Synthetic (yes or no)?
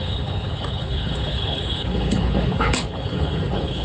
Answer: yes